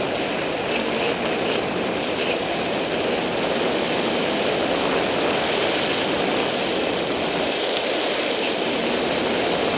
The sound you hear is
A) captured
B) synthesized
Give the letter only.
A